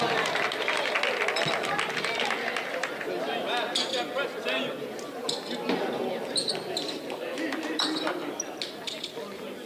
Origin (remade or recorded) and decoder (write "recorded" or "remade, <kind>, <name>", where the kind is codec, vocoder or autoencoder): recorded